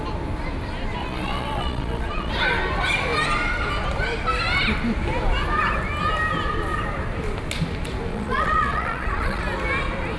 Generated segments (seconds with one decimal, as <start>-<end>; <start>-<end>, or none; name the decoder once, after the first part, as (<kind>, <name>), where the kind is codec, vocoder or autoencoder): 1.0-2.3 (vocoder, Vocos); 8.1-9.4